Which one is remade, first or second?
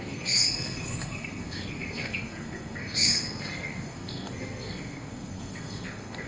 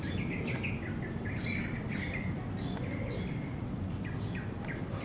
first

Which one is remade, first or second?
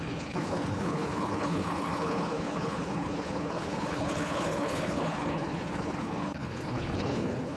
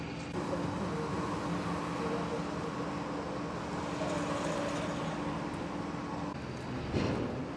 first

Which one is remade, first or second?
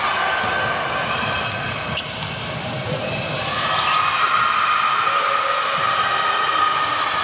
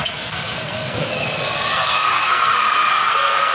second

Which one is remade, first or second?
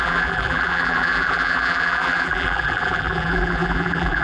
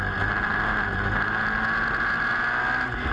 first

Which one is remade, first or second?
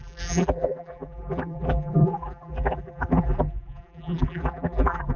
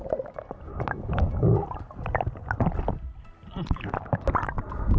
first